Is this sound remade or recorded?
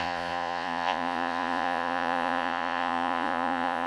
remade